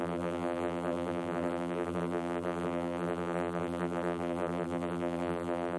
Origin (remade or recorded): remade